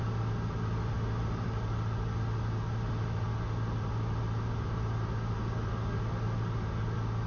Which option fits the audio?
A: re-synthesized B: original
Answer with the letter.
B